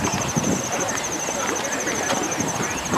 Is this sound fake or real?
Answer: fake